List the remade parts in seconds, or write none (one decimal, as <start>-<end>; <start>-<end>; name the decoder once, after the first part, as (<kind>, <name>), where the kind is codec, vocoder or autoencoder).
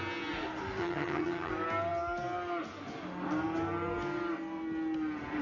0.8-1.5 (vocoder, HiFi-GAN)